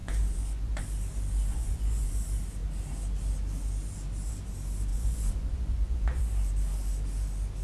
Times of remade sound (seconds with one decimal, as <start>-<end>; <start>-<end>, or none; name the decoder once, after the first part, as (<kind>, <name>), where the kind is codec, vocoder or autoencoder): 0.0-0.8 (vocoder, Vocos); 1.5-2.1; 4.9-6.2